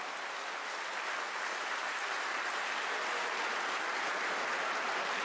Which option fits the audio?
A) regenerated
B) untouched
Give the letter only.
B